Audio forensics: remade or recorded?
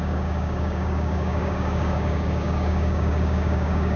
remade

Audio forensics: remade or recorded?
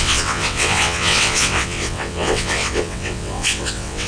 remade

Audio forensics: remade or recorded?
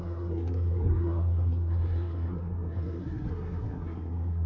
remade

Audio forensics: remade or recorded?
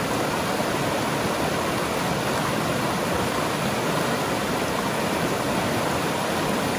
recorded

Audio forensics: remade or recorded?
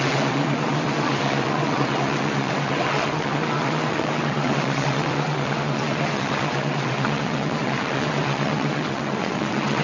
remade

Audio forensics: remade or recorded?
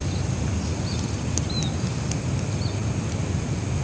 recorded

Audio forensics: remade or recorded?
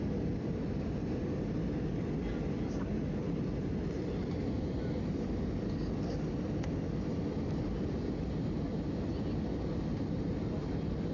recorded